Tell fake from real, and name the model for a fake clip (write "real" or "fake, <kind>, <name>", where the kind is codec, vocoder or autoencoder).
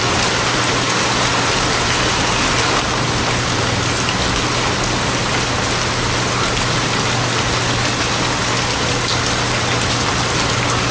real